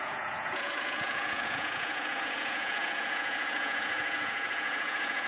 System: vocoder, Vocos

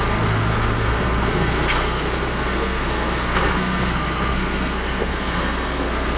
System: codec, SNAC